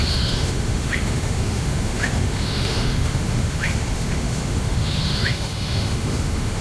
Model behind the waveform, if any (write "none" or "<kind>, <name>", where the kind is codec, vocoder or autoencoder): autoencoder, DAC-VAE